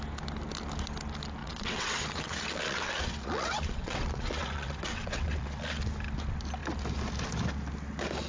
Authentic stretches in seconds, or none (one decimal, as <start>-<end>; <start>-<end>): 0.0-1.4; 5.8-8.3